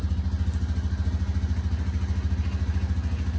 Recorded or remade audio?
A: recorded